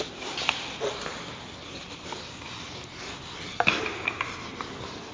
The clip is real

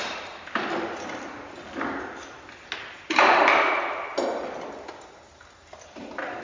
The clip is real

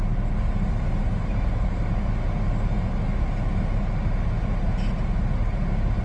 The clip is real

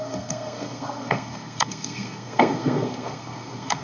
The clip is fake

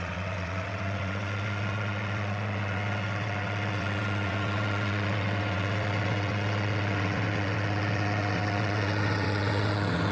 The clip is fake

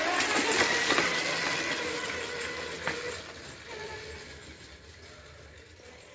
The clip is real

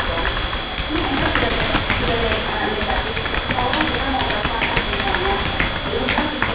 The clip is real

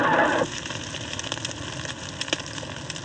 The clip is real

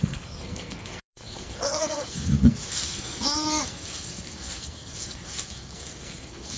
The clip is fake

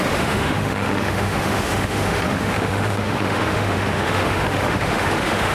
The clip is fake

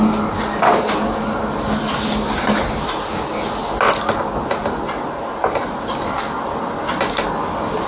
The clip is real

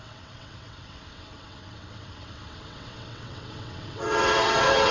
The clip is fake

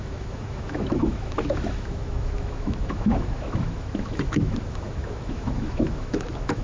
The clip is fake